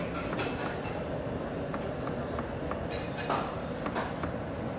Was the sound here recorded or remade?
recorded